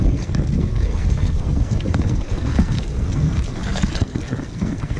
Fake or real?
fake